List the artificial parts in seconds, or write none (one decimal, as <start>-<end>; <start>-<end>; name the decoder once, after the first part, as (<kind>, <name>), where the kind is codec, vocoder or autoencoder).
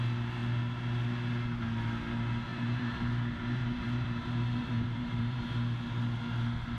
2.5-5.4 (vocoder, BigVGAN v2)